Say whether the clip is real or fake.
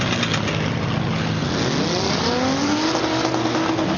real